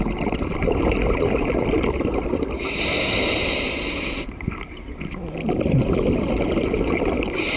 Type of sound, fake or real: real